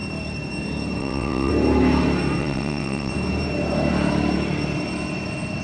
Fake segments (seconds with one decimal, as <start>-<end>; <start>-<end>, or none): 1.0-1.5; 2.4-3.1